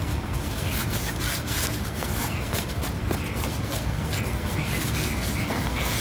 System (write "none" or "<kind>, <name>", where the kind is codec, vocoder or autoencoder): codec, SNAC